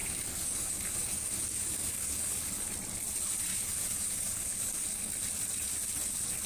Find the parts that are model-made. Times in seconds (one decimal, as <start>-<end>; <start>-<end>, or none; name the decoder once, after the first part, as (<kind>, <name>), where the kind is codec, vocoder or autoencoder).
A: 0.0-2.7 (codec, DAC); 3.5-5.1